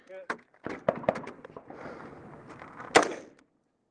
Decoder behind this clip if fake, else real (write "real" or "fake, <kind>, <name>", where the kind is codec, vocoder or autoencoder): real